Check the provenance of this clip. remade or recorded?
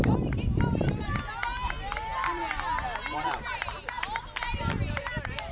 recorded